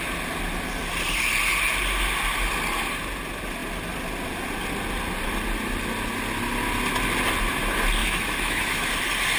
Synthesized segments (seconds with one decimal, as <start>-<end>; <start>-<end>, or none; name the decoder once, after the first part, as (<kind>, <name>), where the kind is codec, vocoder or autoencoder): 8.0-8.9 (autoencoder, DAC-VAE)

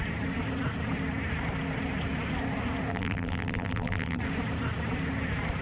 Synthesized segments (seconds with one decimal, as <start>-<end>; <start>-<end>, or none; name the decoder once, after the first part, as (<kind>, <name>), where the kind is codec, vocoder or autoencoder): 2.9-4.2 (vocoder, BigVGAN v2)

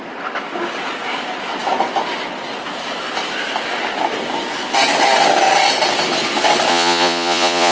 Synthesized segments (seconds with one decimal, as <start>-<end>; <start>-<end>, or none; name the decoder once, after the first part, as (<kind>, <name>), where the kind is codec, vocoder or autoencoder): 6.7-7.7 (vocoder, Vocos)

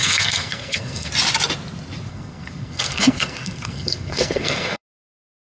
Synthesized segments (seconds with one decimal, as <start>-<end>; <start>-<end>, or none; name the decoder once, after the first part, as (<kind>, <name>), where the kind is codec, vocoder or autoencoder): 0.0-1.1 (codec, SNAC); 2.1-4.8

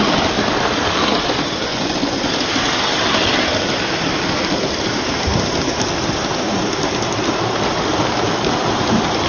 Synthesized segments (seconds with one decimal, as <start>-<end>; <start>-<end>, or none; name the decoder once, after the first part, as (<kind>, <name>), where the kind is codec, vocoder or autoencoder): 1.7-2.3 (vocoder, Vocos)

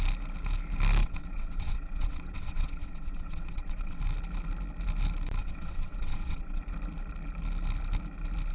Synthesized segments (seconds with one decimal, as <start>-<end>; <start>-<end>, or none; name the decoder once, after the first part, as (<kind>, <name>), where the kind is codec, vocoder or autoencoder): 1.0-4.0 (vocoder, WaveNeXt); 5.4-6.6